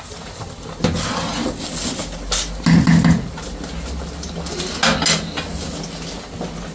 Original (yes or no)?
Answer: yes